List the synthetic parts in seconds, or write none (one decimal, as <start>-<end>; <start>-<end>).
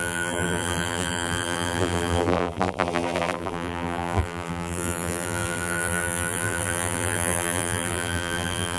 0.0-8.8